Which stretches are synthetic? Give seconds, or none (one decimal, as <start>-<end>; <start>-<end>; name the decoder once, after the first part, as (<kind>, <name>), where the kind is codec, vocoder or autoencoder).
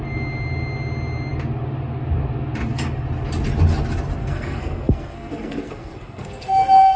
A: 4.2-7.0 (codec, SNAC)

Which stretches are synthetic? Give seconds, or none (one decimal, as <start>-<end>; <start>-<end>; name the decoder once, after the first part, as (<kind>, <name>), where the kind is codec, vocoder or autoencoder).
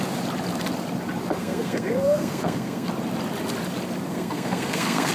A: 1.4-2.9 (codec, SNAC); 4.1-5.1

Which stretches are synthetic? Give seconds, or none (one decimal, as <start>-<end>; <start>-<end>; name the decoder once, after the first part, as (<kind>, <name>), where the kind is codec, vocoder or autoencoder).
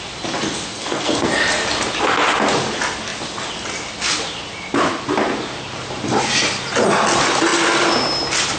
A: 0.7-1.3 (codec, SNAC)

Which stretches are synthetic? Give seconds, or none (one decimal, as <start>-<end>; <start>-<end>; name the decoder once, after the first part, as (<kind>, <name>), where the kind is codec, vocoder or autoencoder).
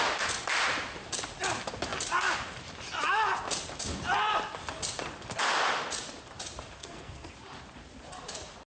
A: 6.8-7.3 (codec, SNAC)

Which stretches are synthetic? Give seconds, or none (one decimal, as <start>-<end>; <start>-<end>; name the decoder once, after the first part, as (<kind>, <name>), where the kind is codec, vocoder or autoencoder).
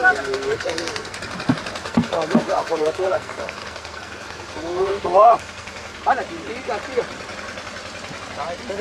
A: 0.0-1.2 (codec, SNAC); 1.8-6.1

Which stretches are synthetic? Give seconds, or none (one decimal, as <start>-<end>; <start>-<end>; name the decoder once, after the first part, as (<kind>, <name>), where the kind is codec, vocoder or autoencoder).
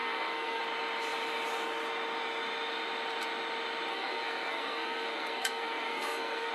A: 0.0-0.6 (codec, SNAC); 3.9-6.5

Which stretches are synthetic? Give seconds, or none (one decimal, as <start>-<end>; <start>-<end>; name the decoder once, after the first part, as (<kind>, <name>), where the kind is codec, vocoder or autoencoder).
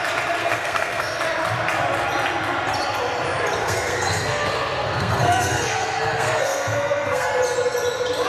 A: 0.4-1.2 (codec, SNAC); 3.6-7.3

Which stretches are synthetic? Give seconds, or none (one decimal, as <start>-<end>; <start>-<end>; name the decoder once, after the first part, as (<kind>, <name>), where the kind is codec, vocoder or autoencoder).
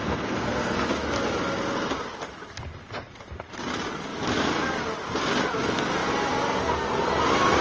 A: 0.0-0.9 (codec, SNAC)